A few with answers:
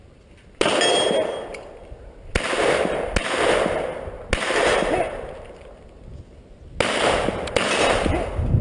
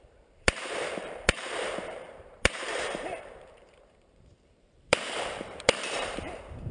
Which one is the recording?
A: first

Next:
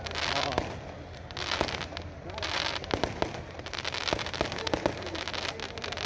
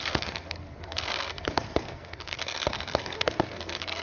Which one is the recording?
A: first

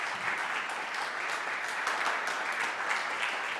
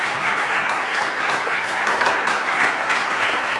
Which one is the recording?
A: first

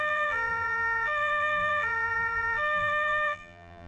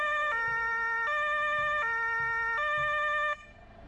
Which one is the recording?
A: second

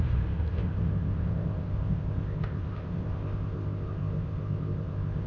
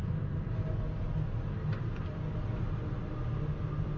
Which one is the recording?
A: second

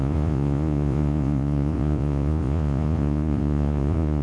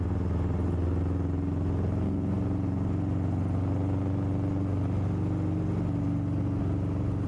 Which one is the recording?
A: second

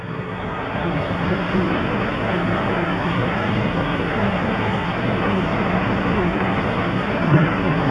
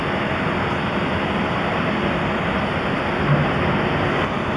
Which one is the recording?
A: second